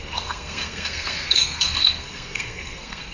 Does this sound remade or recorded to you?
remade